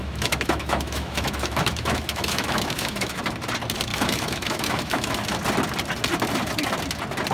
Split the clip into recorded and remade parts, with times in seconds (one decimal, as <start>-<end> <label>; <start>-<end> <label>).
0.0-3.2 remade; 3.2-3.9 recorded; 3.9-5.1 remade; 5.1-7.3 recorded